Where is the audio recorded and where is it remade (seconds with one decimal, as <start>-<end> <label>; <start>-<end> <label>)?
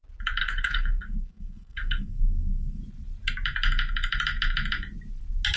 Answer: 0.0-0.4 recorded; 0.4-2.8 remade; 2.8-5.6 recorded